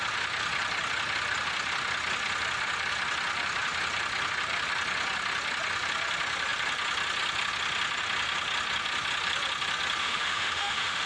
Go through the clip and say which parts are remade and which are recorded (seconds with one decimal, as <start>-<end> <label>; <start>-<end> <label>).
0.0-10.0 recorded; 10.0-11.1 remade